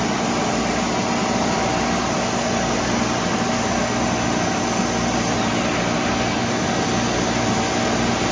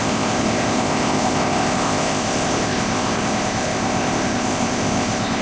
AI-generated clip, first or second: second